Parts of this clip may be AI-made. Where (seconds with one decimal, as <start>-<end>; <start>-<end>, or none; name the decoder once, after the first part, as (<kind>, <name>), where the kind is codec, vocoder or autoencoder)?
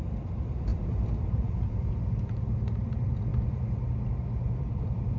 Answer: 0.0-5.2 (vocoder, BigVGAN v2)